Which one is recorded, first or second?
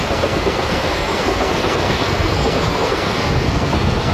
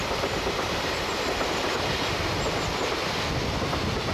second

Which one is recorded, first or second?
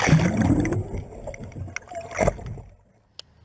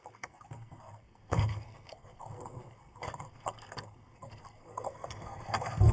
first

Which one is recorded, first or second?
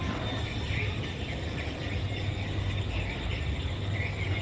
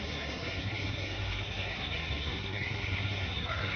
first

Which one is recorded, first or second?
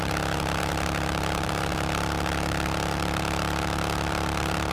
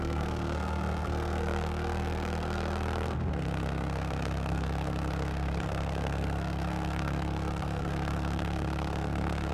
first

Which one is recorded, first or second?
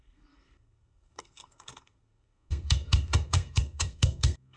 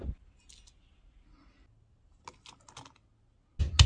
second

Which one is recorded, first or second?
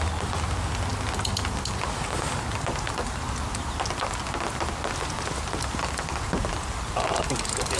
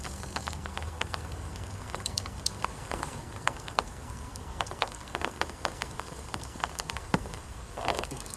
first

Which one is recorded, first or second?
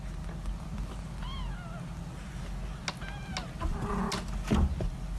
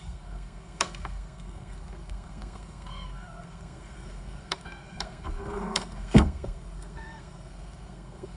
first